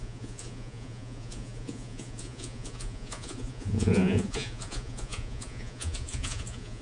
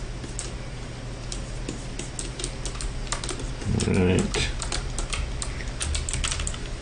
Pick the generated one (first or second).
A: first